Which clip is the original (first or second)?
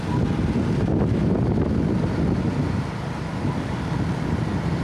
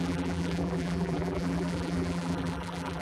first